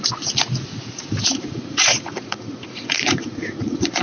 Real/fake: fake